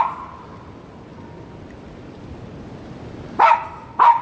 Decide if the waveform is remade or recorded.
recorded